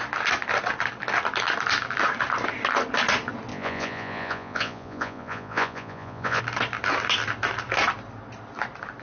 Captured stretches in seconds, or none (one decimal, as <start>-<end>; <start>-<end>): 0.0-3.5; 6.4-9.0